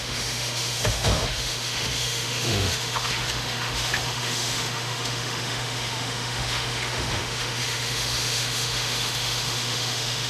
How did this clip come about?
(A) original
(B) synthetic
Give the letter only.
B